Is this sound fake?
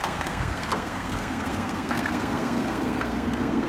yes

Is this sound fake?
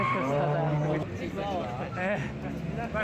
no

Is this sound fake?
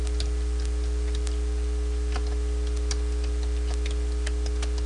no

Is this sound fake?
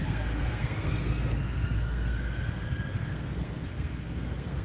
yes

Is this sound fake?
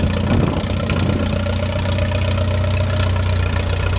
no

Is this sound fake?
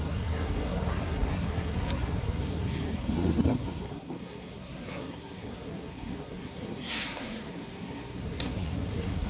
yes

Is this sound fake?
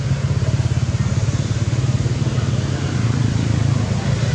no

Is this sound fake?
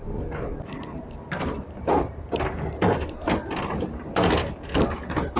no